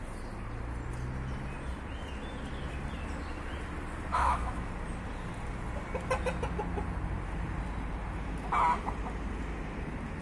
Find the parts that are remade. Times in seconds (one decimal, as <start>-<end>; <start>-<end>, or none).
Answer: 4.1-4.7